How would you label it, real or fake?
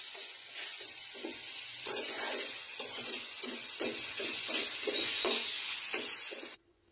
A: fake